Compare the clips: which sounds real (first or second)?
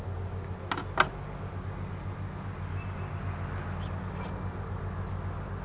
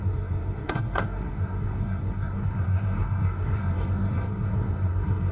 first